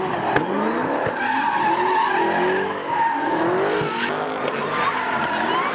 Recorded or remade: recorded